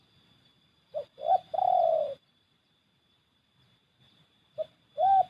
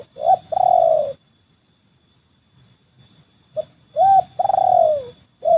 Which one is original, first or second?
second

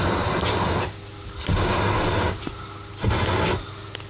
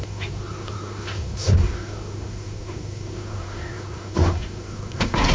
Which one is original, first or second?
first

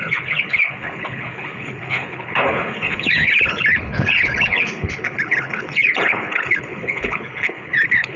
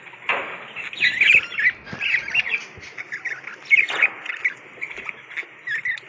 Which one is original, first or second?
second